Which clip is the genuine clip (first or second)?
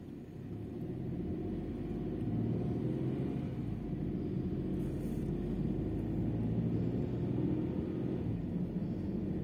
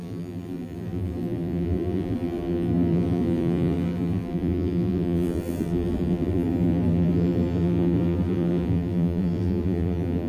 first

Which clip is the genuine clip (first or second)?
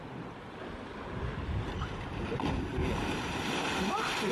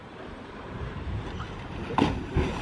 first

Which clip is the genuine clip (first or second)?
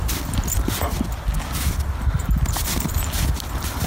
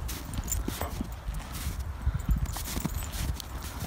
second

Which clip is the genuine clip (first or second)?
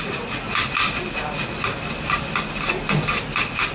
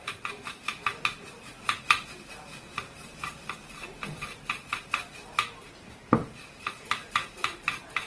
first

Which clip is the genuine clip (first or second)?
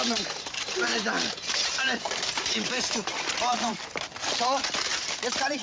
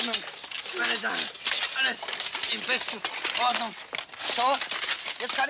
second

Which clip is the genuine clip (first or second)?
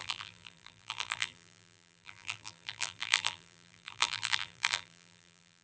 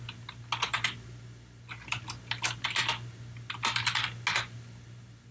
second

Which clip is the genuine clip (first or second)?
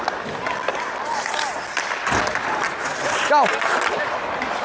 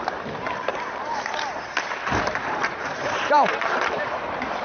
first